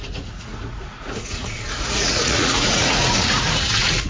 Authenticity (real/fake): fake